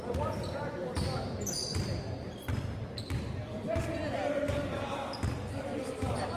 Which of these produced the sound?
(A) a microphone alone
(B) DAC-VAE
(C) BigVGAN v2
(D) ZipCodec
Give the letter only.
A